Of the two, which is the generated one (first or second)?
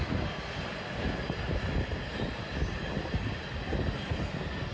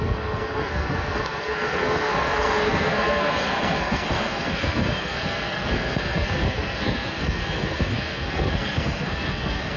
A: second